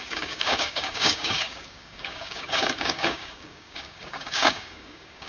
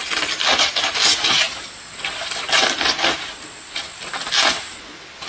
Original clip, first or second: second